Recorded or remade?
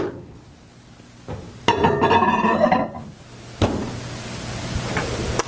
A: recorded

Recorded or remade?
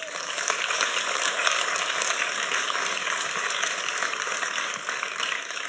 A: remade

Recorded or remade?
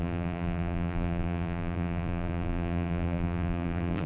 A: remade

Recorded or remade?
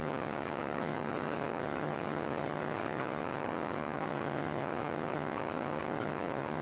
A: remade